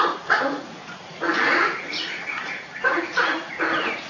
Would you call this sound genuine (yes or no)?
no